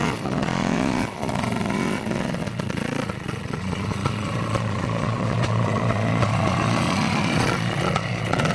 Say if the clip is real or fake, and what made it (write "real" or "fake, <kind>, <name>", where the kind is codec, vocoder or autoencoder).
fake, vocoder, Vocos